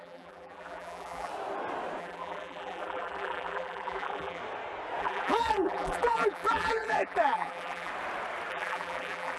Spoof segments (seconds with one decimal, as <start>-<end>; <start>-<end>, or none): 0.0-1.3; 2.0-4.4; 5.0-7.9; 8.5-9.4